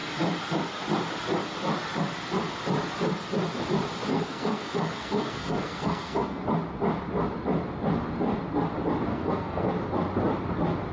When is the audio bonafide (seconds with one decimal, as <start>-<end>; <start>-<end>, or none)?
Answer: 0.0-4.1; 6.4-9.1; 9.7-10.9